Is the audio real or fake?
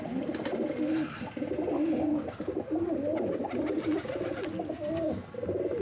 real